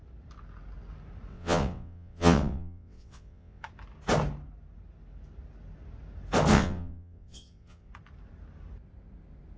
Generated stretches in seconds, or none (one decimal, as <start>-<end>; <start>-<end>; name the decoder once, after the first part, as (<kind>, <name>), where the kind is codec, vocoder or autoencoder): 1.3-3.6 (vocoder, WaveNeXt); 6.5-7.9